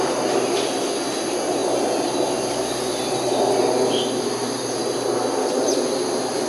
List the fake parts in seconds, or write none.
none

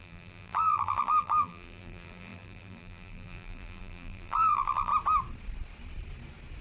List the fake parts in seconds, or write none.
0.0-4.9 (vocoder, BigVGAN v2)

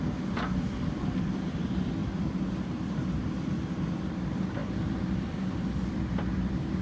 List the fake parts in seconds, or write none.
4.6-6.8 (vocoder, BigVGAN v2)

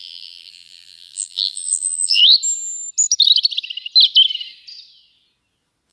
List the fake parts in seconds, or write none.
0.0-2.2 (vocoder, BigVGAN v2)